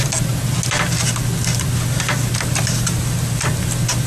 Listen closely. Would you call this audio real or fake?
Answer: real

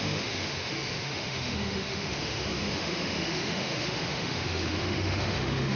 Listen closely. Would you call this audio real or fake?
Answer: fake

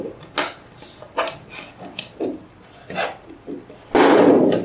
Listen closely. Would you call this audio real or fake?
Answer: real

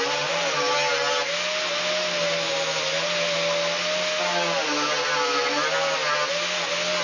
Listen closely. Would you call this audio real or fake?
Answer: real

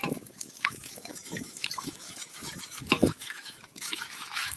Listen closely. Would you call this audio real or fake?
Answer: fake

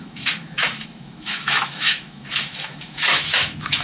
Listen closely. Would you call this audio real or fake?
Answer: fake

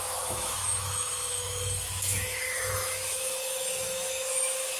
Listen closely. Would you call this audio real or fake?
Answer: fake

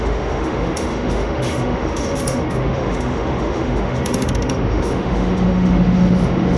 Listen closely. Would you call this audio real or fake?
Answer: fake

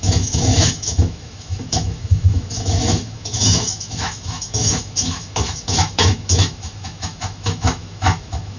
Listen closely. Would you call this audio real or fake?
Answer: fake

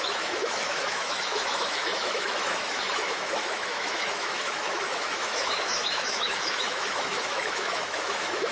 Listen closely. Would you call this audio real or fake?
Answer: fake